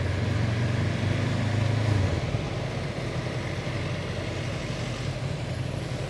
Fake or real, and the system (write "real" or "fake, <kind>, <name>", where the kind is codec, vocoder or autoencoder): real